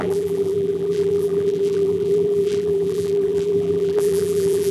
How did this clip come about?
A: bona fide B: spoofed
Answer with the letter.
B